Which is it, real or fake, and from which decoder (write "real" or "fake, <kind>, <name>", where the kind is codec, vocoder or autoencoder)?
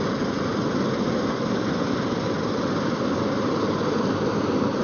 real